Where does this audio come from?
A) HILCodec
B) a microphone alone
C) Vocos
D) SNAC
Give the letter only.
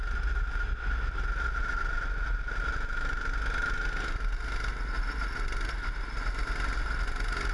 B